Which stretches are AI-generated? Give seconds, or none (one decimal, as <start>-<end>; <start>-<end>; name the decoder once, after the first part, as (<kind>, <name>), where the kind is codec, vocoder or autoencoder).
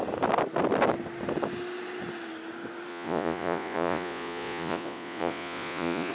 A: 2.9-6.1 (vocoder, Vocos)